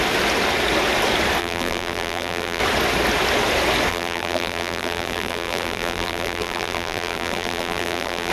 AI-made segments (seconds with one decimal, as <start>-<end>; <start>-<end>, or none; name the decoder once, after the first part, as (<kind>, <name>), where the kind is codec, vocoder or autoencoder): 1.4-2.6 (vocoder, BigVGAN v2); 3.9-8.3